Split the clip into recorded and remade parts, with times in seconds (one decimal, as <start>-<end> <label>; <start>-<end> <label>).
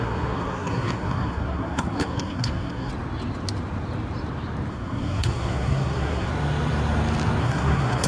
0.0-2.9 remade; 2.9-4.7 recorded; 4.7-6.3 remade; 6.3-7.4 recorded; 7.4-8.1 remade